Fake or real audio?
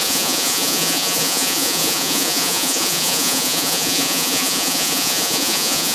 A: fake